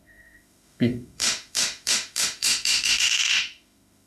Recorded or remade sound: remade